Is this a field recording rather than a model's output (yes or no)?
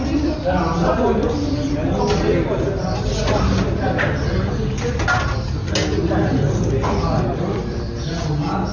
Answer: yes